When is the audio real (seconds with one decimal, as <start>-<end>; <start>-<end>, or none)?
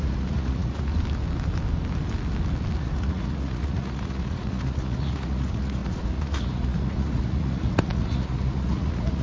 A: 0.9-2.8